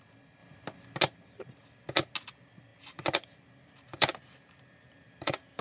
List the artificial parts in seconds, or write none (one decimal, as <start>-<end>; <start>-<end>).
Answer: 2.7-5.6